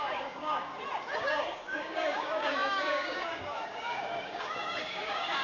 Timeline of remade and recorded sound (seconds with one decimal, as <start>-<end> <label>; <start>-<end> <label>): 0.0-0.7 remade; 0.7-1.2 recorded; 1.2-5.4 remade